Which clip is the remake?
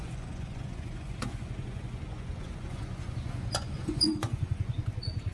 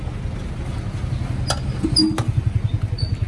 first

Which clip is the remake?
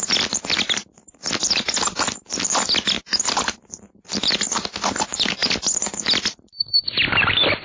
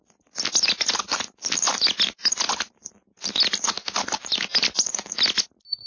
first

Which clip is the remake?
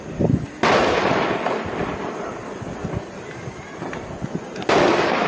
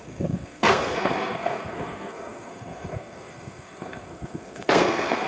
second